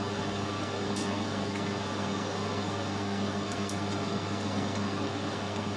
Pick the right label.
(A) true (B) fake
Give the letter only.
B